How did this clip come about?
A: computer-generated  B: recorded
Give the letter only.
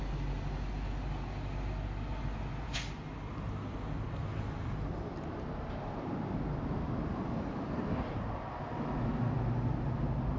B